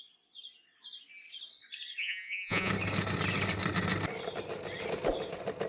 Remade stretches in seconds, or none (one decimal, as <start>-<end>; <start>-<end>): 2.0-2.7